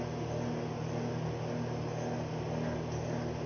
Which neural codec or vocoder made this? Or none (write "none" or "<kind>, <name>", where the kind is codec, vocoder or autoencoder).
none